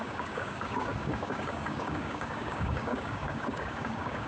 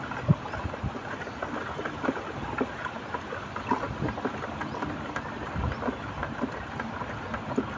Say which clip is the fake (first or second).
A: first